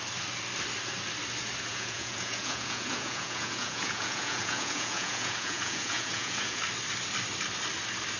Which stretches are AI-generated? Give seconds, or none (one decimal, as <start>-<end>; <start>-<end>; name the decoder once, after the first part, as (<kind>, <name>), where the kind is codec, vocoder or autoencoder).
1.7-6.6 (vocoder, Vocos)